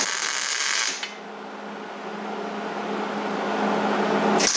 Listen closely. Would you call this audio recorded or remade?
recorded